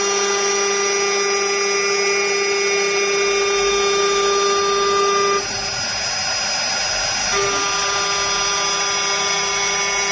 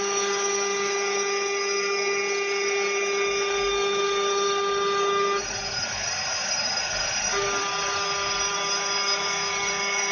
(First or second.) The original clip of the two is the first